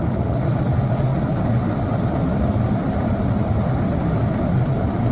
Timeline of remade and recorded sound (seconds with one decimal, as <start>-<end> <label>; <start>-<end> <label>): 0.0-5.1 recorded